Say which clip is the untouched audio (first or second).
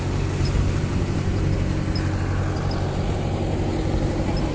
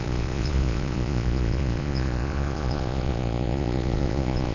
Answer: first